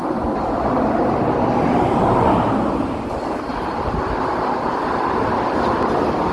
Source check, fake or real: real